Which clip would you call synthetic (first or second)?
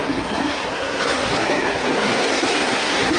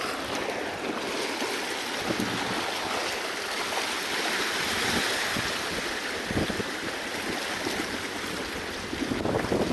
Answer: first